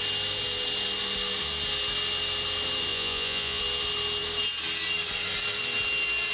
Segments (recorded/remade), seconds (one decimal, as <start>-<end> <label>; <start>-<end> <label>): 0.0-2.9 recorded; 2.9-3.6 remade; 3.6-6.3 recorded